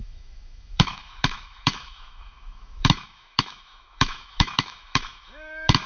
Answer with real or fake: fake